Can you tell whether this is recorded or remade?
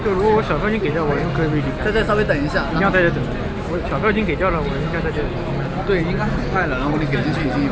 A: recorded